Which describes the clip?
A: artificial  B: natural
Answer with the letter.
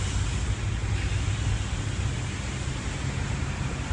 B